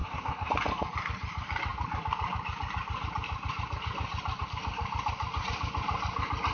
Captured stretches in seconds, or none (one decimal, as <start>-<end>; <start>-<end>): 0.5-6.5